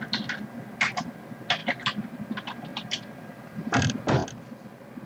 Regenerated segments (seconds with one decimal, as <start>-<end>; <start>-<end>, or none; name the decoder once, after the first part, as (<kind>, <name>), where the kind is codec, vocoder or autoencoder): 2.7-3.3 (vocoder, BigVGAN v2)